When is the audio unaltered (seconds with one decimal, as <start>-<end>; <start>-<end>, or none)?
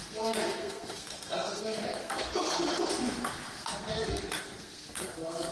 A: 2.3-2.9